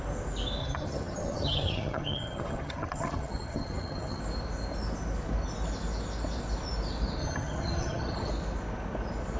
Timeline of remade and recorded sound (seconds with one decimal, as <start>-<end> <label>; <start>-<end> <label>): 0.0-0.6 recorded; 0.6-4.2 remade; 4.2-7.2 recorded; 7.2-8.3 remade; 8.3-9.4 recorded